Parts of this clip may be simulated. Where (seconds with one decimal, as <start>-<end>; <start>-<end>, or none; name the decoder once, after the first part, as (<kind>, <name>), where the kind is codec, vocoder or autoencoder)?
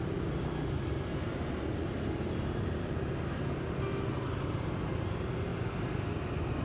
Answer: none